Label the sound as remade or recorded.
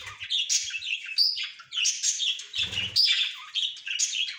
recorded